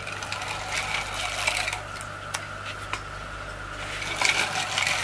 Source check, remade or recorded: recorded